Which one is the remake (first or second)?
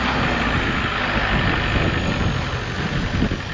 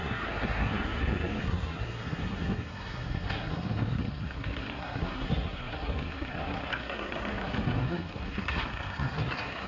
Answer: second